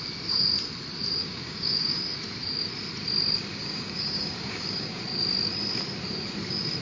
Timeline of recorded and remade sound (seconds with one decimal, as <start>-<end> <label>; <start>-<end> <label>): 0.0-1.2 recorded; 1.2-2.0 remade; 2.0-3.5 recorded; 3.5-5.0 remade; 5.0-6.8 recorded